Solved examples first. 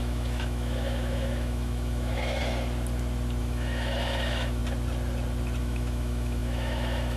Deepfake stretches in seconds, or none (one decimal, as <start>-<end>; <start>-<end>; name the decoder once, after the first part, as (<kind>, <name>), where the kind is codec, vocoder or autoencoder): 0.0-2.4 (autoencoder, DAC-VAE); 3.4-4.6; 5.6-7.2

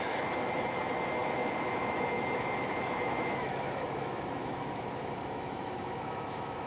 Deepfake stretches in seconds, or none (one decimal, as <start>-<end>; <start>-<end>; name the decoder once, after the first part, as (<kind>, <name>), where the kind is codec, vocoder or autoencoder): 0.0-6.7 (autoencoder, DAC-VAE)

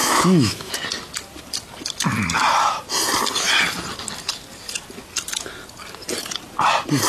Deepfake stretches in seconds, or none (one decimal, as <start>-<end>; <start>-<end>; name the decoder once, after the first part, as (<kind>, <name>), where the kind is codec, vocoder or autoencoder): 0.0-0.7 (autoencoder, DAC-VAE)

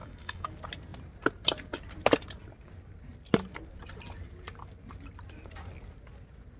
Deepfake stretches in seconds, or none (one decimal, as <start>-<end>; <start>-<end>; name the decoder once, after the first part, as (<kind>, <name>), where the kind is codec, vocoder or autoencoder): 0.0-0.5 (autoencoder, DAC-VAE)